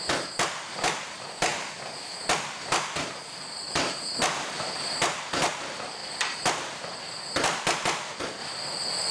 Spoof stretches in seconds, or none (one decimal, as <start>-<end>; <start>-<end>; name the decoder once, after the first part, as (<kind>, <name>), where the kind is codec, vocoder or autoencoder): none